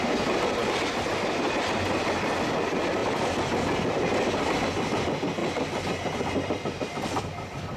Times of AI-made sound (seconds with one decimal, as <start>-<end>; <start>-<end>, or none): none